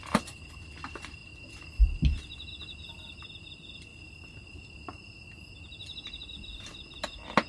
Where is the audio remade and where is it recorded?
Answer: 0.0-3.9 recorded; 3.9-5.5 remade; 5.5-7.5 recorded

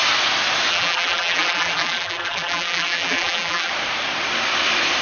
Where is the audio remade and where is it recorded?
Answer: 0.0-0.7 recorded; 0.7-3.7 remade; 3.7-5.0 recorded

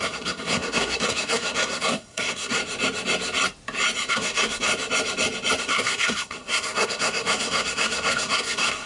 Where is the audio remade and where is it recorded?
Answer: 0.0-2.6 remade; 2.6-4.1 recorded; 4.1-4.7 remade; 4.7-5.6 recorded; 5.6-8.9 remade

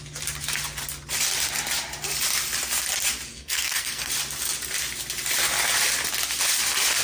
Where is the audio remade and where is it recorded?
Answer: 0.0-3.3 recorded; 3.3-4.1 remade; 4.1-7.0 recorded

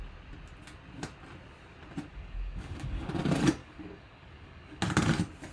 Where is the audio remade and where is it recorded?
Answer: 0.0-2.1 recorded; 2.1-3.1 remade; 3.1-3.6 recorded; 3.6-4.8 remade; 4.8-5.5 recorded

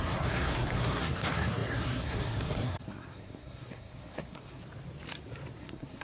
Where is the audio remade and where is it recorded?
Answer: 0.0-4.6 remade; 4.6-5.6 recorded; 5.6-6.0 remade